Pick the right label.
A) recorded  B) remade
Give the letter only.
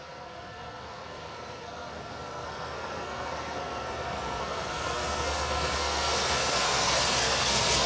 B